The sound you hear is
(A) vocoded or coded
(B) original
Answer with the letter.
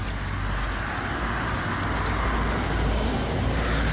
B